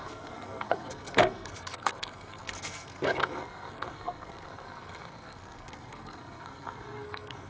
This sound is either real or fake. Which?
fake